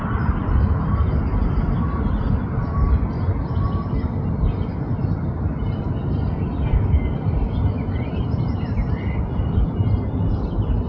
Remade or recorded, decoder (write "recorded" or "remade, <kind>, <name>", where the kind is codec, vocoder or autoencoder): recorded